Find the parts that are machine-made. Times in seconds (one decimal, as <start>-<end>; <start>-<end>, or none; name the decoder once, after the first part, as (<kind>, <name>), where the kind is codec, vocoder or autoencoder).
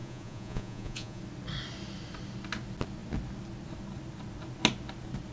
0.0-1.2 (vocoder, Vocos)